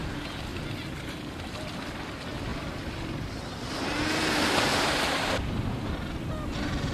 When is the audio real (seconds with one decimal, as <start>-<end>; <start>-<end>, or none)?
0.0-6.9